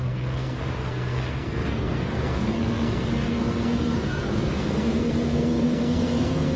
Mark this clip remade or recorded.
remade